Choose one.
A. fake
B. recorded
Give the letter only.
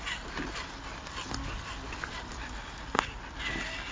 B